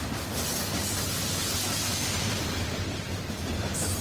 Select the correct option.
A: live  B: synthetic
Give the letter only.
A